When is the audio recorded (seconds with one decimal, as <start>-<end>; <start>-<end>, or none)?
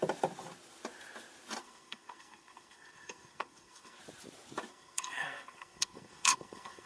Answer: 0.0-1.6; 4.0-4.7